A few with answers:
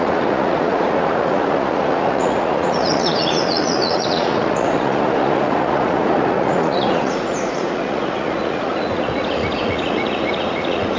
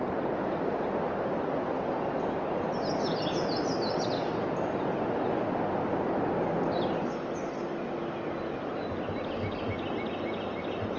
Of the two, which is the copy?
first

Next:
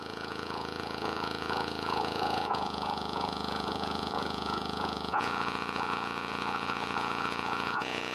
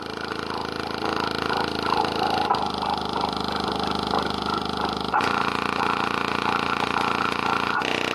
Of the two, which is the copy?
first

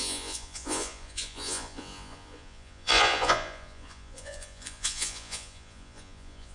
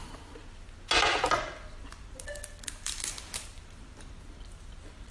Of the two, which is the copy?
first